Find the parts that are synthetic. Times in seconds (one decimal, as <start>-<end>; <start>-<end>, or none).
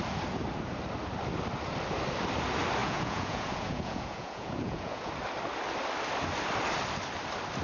2.8-5.1